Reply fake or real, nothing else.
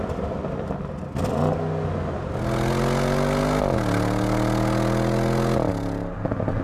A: real